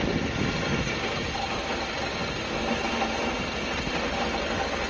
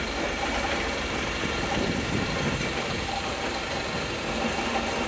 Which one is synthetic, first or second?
second